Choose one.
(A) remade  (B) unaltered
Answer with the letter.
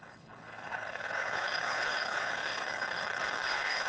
A